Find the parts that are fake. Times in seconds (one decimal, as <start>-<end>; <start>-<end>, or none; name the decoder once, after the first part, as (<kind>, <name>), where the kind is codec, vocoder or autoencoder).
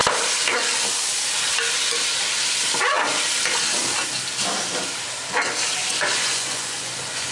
5.8-7.3 (vocoder, Vocos)